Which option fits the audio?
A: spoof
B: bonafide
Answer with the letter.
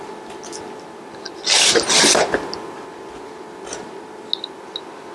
B